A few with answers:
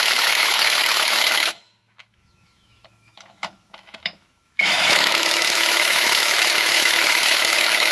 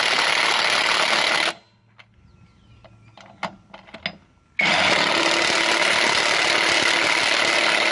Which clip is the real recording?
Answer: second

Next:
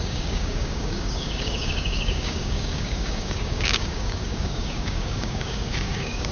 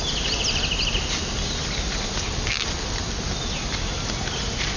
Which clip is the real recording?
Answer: second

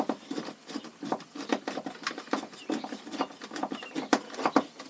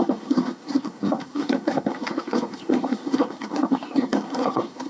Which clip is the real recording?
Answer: first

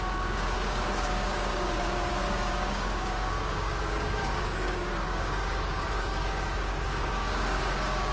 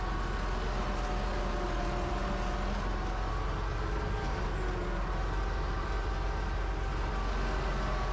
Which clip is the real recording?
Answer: second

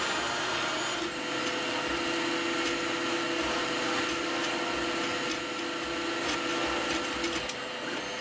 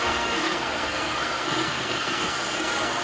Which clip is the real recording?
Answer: first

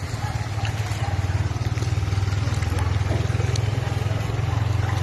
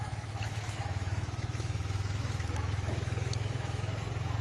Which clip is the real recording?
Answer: first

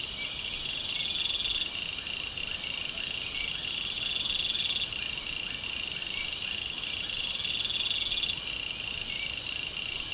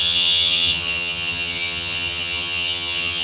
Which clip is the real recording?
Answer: first